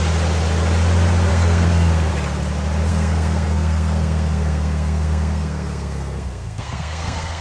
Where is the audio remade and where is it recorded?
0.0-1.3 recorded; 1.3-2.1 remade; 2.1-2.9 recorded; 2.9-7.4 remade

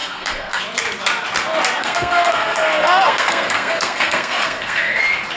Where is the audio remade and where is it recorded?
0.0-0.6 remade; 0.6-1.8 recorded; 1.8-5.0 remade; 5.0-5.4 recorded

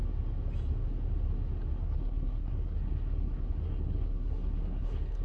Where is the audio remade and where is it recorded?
0.0-1.8 recorded; 1.8-5.2 remade

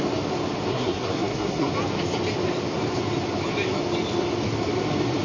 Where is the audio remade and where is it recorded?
0.0-0.7 recorded; 0.7-1.7 remade; 1.7-5.2 recorded

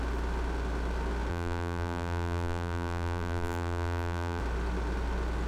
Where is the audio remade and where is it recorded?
0.0-1.3 recorded; 1.3-4.4 remade; 4.4-5.5 recorded

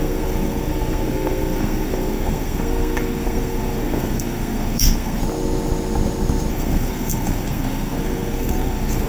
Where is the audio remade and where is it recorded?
0.0-5.2 remade; 5.2-6.5 recorded; 6.5-9.1 remade

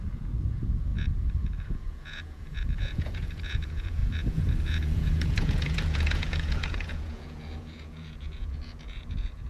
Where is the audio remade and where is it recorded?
0.0-9.5 remade